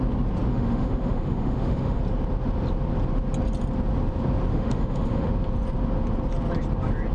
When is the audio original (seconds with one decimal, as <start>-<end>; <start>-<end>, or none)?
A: 0.0-0.5; 2.0-4.5; 5.3-7.1